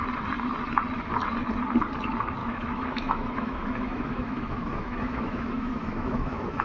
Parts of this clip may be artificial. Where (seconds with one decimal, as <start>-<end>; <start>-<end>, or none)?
2.4-6.6

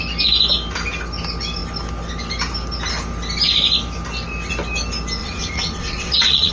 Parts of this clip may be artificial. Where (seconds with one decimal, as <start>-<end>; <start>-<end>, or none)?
5.2-6.5

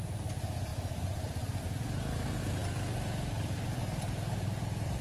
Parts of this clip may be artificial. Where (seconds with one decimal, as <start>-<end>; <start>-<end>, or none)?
none

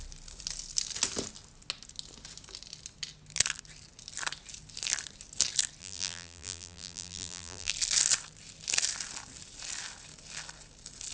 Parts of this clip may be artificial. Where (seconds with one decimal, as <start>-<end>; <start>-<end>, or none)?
5.8-7.7

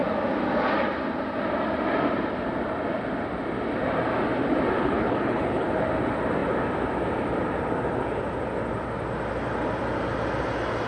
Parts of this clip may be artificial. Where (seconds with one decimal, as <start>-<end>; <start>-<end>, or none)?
4.8-5.7